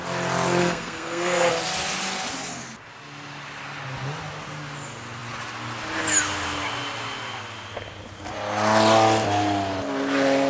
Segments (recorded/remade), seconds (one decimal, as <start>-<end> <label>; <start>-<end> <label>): 0.0-0.6 recorded; 0.6-1.5 remade; 1.5-10.5 recorded